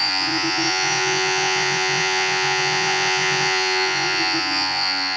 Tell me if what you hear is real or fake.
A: fake